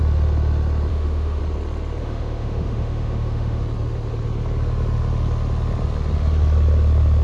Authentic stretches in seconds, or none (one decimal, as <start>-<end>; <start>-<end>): 0.0-0.9; 1.4-2.0; 3.6-7.2